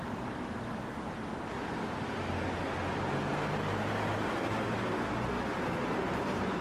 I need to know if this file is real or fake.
real